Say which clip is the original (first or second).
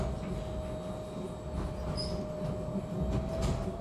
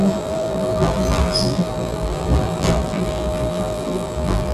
first